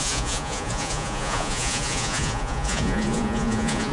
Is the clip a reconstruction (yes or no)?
yes